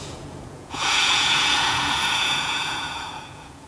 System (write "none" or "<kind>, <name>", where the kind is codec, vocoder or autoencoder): vocoder, Vocos